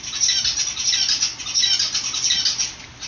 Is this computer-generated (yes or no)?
no